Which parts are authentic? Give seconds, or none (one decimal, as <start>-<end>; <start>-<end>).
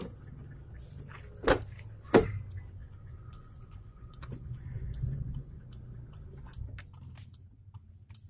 0.0-2.8; 5.6-8.3